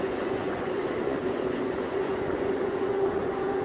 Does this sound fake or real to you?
fake